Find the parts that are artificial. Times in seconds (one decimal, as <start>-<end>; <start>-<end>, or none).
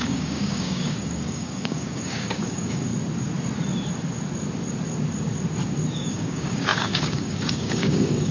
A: 0.0-2.9; 5.9-8.3